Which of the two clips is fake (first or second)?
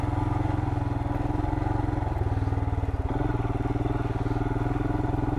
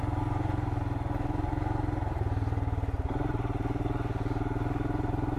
second